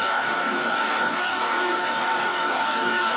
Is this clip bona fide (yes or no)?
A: no